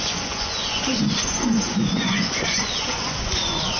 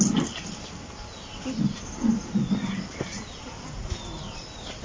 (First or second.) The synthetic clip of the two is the first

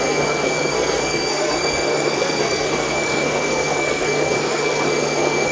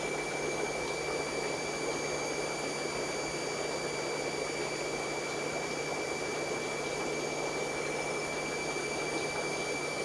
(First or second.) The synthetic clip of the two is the first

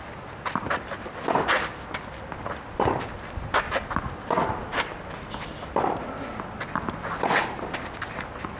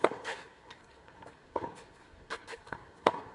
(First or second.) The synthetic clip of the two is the second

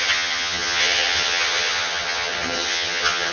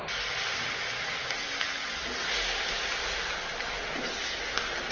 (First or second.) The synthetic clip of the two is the first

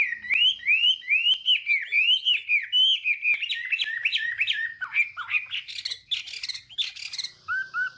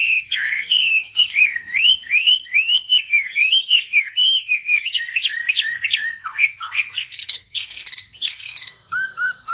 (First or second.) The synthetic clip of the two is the second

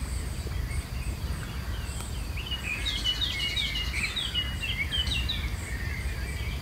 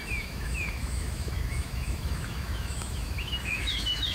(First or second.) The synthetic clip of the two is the second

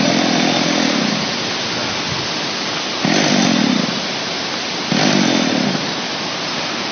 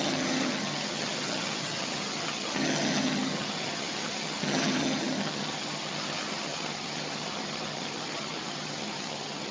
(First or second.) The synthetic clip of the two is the second